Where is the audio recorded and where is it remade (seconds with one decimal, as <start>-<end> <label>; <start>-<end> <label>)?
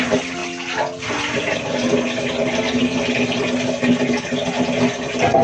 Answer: 0.0-5.4 recorded